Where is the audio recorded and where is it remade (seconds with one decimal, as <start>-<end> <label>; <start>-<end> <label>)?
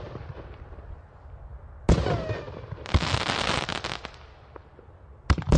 0.0-5.6 recorded